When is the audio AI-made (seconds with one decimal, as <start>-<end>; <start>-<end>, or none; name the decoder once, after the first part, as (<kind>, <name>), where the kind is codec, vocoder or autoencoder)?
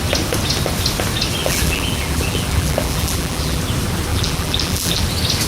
1.4-3.6 (vocoder, BigVGAN v2); 4.1-5.0